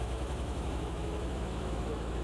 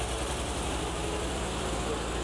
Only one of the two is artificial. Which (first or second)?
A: first